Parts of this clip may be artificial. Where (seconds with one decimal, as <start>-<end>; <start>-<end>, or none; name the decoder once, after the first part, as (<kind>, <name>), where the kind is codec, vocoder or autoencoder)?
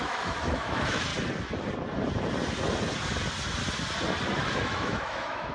0.0-1.1 (autoencoder, DAC-VAE); 4.4-5.5